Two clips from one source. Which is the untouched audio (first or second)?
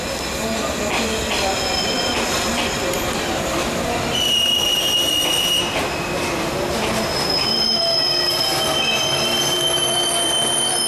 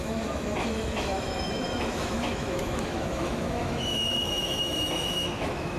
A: first